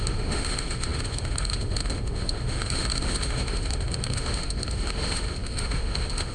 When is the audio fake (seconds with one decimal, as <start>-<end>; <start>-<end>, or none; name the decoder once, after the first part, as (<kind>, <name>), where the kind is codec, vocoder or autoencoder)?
0.0-6.3 (autoencoder, DAC-VAE)